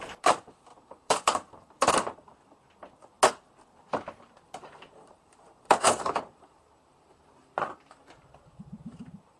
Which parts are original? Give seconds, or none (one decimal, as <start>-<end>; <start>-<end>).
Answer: 0.0-0.7; 1.9-3.9; 8.3-9.4